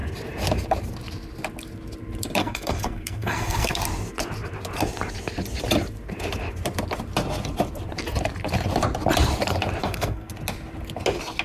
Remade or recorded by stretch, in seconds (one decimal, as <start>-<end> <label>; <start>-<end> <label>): 0.0-2.4 recorded; 2.4-3.8 remade; 3.8-9.8 recorded; 9.8-10.3 remade; 10.3-11.4 recorded